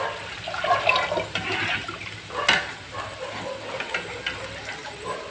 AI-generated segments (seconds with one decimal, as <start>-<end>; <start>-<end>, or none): none